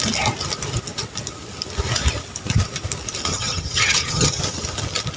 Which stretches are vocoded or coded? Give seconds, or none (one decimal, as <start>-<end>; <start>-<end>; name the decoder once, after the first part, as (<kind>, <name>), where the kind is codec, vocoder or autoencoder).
3.3-4.4 (vocoder, HiFi-GAN)